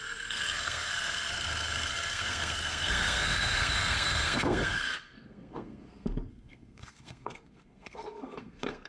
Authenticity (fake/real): fake